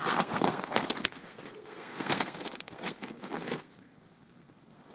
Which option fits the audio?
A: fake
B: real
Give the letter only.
A